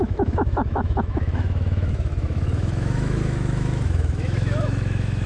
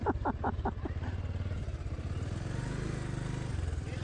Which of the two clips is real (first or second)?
second